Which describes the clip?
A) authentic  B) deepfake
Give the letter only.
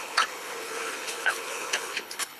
B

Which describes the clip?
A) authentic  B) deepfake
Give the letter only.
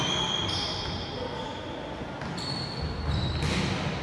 A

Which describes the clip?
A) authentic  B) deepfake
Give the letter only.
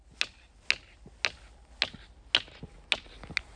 A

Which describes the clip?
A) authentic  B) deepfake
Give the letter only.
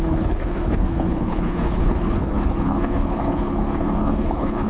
B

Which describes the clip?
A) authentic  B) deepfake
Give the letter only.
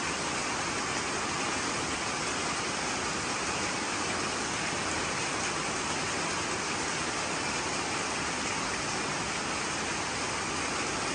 A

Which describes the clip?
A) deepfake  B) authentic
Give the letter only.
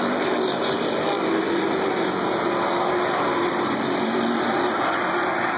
A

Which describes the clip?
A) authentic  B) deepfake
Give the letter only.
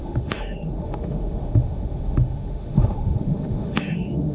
B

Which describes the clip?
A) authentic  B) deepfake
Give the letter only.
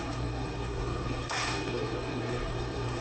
B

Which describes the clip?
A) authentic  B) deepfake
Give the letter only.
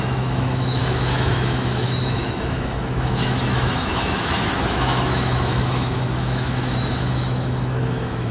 B